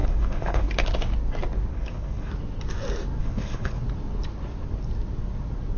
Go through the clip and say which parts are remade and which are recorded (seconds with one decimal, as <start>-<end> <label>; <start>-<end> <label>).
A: 0.0-0.7 remade; 0.7-1.7 recorded; 1.7-2.3 remade; 2.3-3.2 recorded; 3.2-3.8 remade; 3.8-5.8 recorded